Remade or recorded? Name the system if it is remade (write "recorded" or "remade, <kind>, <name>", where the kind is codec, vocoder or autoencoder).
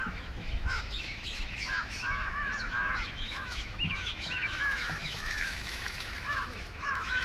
remade, autoencoder, DAC-VAE